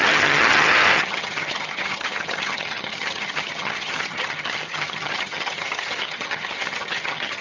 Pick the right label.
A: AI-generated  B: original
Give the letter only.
A